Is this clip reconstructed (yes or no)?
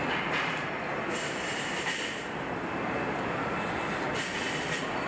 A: no